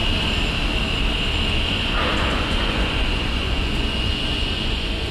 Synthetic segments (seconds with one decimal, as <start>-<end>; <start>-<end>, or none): 1.5-5.1